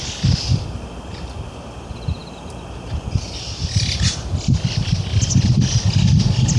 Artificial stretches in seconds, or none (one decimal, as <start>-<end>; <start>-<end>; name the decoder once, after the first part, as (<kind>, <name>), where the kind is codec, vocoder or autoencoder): none